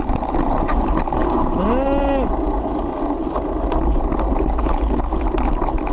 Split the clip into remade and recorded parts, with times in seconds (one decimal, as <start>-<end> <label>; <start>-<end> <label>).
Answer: 0.0-5.9 recorded